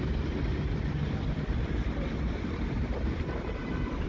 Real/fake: fake